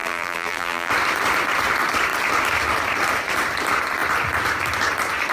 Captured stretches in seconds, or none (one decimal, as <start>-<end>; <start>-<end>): 0.9-5.3